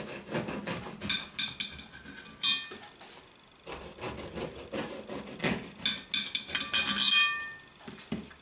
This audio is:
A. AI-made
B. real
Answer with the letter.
B